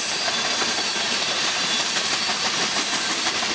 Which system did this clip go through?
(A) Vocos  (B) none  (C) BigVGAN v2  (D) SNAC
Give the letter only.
C